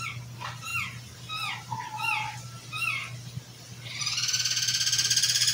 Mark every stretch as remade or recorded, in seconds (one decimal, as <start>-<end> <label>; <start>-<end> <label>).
0.0-5.5 recorded